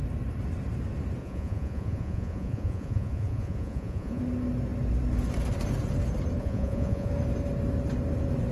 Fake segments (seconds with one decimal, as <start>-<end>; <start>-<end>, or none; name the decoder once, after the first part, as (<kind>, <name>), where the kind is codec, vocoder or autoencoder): 1.2-4.2 (vocoder, Vocos); 6.4-7.1